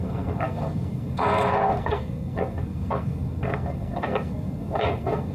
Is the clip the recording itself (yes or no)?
no